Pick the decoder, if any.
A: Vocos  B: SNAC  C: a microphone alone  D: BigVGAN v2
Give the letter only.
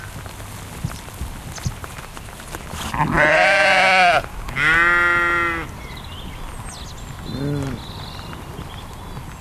C